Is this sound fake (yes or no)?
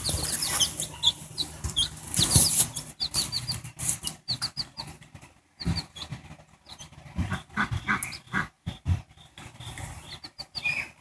no